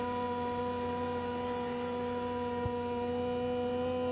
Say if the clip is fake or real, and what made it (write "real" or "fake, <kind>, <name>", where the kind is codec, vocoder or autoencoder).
real